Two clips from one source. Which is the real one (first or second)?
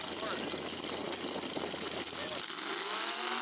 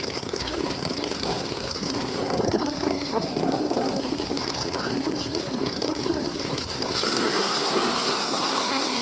first